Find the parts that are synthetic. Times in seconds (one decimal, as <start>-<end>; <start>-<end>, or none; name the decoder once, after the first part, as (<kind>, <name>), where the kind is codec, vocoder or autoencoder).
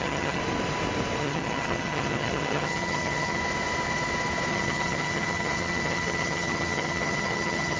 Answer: 0.0-0.4 (vocoder, HiFi-GAN); 1.2-3.4; 4.5-7.8